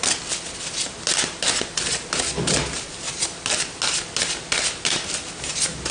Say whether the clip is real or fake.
real